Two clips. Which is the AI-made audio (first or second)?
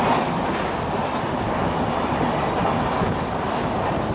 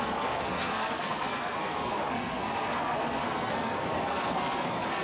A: second